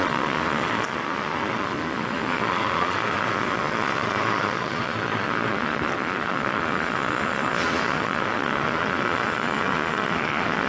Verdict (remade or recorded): remade